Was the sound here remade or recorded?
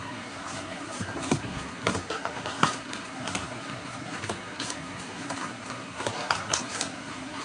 remade